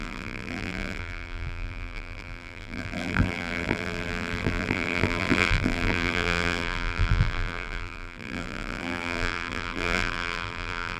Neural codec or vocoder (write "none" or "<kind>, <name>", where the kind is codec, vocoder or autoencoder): vocoder, BigVGAN v2